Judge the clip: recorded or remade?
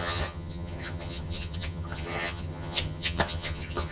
remade